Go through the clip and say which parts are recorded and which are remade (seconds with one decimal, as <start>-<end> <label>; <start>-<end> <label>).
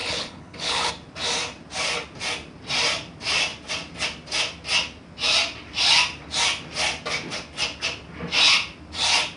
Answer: 0.0-0.9 remade; 0.9-9.4 recorded